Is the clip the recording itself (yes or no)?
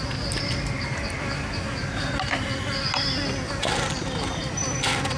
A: yes